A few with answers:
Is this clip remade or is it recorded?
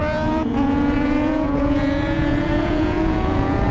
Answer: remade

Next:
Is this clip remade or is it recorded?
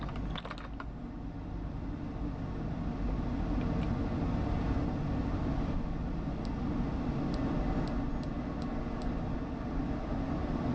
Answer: recorded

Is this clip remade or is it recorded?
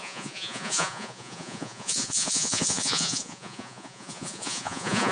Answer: remade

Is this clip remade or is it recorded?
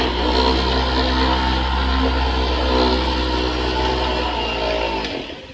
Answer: recorded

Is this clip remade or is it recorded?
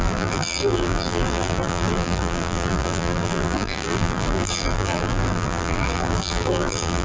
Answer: remade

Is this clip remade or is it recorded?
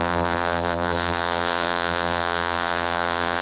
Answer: remade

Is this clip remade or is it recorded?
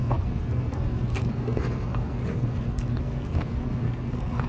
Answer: remade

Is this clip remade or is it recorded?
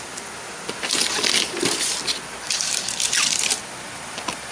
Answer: recorded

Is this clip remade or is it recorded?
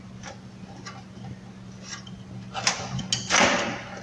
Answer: recorded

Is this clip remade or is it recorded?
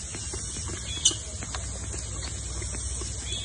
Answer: recorded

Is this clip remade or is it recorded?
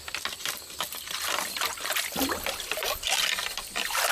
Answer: recorded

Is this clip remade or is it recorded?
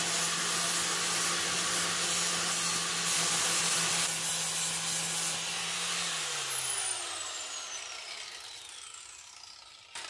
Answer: recorded